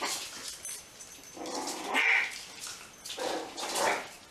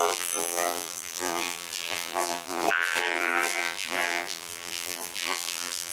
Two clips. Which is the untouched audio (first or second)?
first